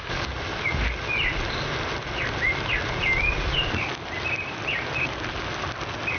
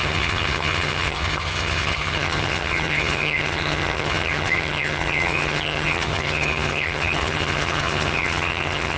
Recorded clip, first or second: first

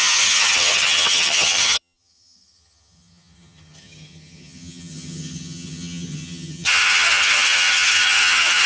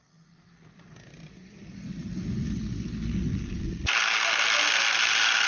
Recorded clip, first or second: second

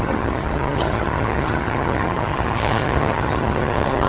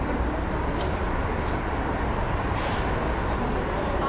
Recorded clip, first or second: second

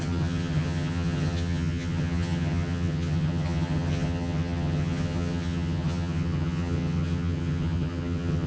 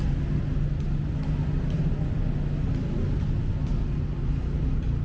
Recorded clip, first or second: second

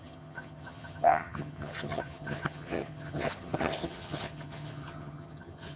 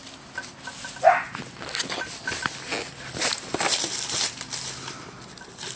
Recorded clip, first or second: second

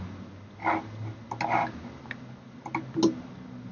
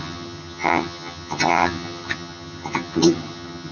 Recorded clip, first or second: first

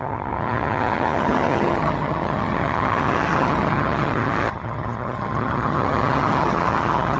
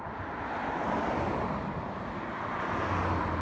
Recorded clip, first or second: second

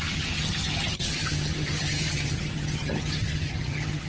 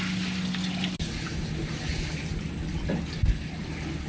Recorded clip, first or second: second